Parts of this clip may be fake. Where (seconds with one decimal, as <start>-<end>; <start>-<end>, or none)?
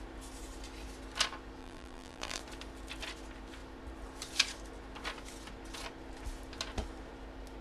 1.6-2.4